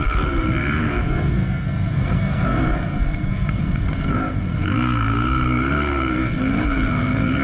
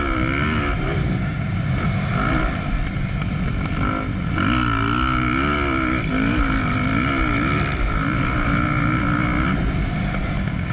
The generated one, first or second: first